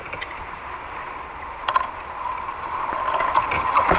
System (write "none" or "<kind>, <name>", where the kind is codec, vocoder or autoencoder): none